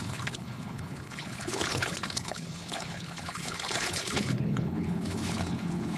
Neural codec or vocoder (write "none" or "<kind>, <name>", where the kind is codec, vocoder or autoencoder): codec, HILCodec